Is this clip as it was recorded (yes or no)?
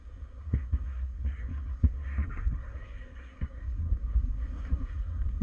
no